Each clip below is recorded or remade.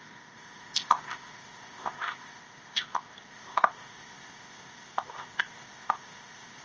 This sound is remade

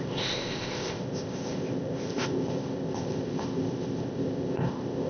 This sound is remade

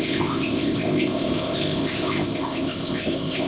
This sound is remade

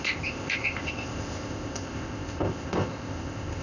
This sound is remade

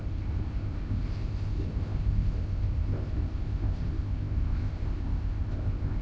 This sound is remade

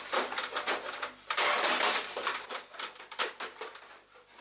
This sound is recorded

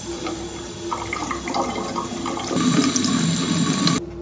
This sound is recorded